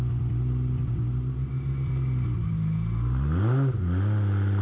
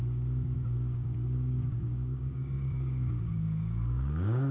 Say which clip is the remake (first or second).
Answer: second